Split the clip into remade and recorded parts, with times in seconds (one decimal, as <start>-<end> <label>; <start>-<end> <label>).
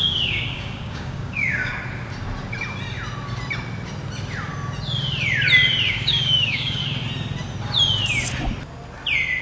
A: 0.0-1.7 remade; 1.7-5.9 recorded; 5.9-6.8 remade; 6.8-9.4 recorded